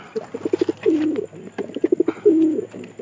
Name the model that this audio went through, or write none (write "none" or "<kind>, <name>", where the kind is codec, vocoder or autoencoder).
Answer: none